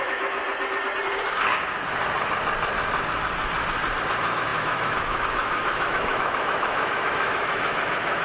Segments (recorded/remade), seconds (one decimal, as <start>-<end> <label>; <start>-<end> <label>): 0.0-0.4 remade; 0.4-4.1 recorded; 4.1-8.2 remade